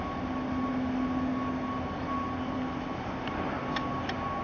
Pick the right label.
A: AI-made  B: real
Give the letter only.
B